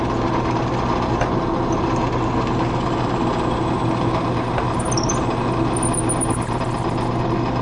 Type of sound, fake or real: real